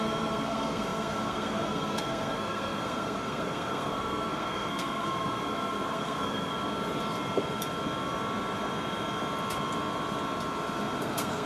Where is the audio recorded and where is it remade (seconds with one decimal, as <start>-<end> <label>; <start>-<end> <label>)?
0.0-6.5 remade; 6.5-11.0 recorded; 11.0-11.5 remade